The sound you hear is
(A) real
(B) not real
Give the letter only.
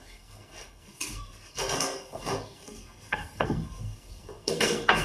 B